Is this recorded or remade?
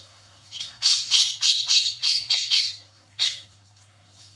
remade